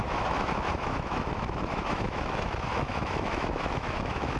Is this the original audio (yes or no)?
no